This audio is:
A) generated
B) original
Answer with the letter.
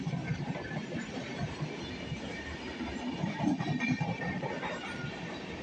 A